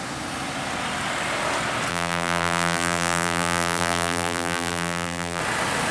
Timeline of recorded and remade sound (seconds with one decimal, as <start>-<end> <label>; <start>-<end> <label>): 0.0-1.9 recorded; 1.9-5.4 remade; 5.4-5.9 recorded